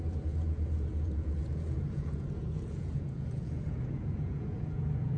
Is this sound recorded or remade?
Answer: remade